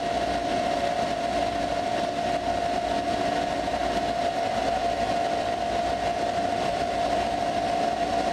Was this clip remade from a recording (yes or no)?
no